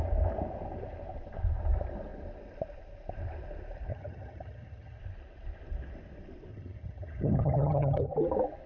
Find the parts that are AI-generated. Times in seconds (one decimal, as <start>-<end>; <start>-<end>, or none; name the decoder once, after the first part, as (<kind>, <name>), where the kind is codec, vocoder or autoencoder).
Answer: 3.9-5.0 (vocoder, HiFi-GAN); 6.5-8.1